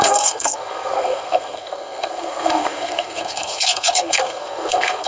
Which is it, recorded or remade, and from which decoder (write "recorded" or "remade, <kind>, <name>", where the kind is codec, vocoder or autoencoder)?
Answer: remade, codec, SNAC